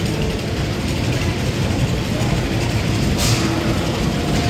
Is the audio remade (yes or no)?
yes